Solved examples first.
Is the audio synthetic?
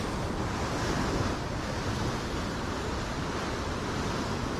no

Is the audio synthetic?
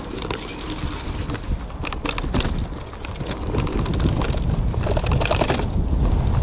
no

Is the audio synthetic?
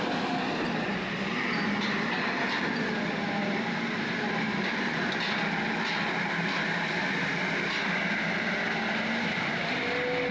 no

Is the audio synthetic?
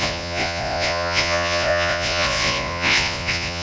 yes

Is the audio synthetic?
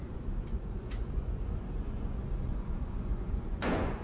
yes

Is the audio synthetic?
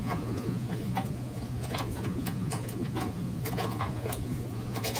yes